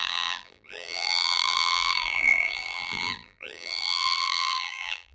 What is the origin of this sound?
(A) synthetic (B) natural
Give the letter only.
A